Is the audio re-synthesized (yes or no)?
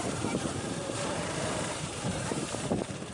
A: yes